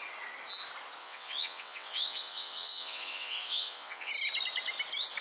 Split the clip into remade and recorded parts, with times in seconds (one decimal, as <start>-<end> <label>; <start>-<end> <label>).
0.0-1.0 recorded; 1.0-4.1 remade; 4.1-5.2 recorded